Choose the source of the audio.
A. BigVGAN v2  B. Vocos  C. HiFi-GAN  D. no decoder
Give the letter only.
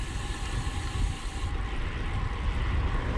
D